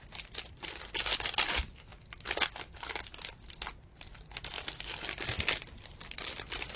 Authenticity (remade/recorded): recorded